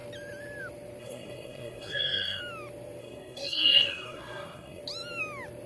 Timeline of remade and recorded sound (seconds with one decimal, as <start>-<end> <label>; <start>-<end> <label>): 0.0-1.0 recorded; 1.0-2.4 remade; 2.4-3.0 recorded; 3.0-4.8 remade; 4.8-5.7 recorded